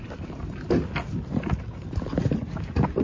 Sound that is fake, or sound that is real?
real